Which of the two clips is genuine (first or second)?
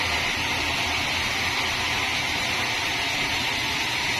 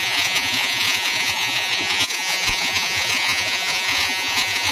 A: first